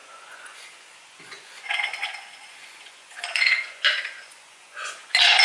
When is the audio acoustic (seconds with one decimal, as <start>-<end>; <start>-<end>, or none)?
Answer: none